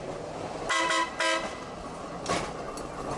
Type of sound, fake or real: real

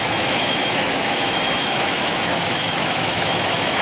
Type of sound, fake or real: fake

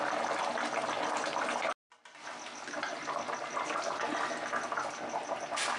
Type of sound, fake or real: real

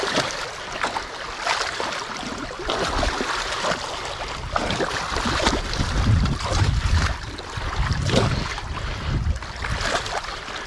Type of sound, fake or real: real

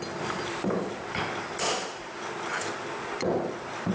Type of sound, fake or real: real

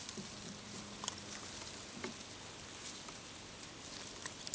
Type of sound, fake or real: real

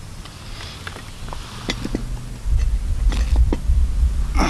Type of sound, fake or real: real